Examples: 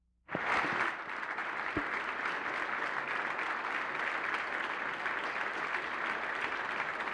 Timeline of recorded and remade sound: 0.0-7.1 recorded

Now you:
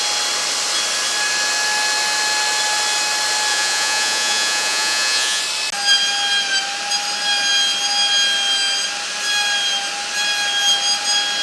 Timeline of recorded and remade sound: 0.0-3.5 recorded; 3.5-5.4 remade; 5.4-11.4 recorded

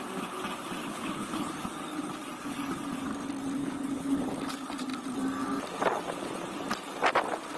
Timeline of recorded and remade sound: 0.0-0.8 recorded; 0.8-1.5 remade; 1.5-3.6 recorded; 3.6-4.2 remade; 4.2-7.6 recorded

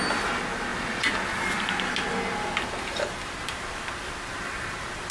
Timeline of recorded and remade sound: 0.0-5.1 recorded

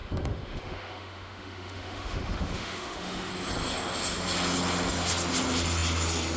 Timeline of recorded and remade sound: 0.0-3.3 remade; 3.3-6.4 recorded

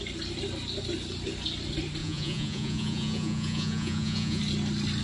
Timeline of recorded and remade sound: 0.0-2.0 recorded; 2.0-4.4 remade; 4.4-5.0 recorded